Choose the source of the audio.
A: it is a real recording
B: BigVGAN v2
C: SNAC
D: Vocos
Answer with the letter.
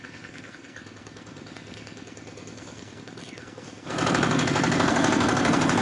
C